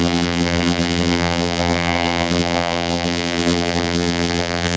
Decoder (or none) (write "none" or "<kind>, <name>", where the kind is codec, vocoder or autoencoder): vocoder, BigVGAN v2